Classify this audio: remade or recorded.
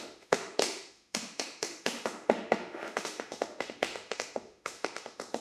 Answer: remade